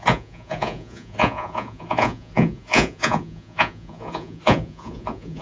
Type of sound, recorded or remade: remade